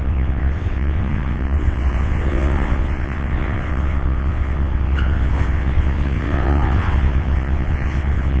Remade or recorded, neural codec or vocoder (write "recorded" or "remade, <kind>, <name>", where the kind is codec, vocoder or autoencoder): remade, vocoder, WaveNeXt